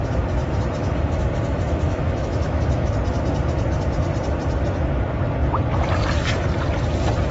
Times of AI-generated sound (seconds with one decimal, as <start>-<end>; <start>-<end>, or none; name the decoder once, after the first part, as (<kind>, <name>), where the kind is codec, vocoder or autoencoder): 0.4-2.9 (autoencoder, DAC-VAE)